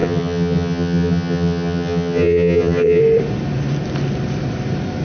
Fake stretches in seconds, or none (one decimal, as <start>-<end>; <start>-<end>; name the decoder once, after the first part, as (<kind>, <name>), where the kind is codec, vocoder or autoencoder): 0.0-3.0 (vocoder, HiFi-GAN)